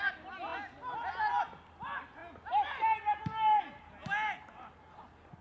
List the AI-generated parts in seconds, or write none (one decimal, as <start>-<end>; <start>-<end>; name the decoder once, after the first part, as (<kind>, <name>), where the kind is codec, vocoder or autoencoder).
none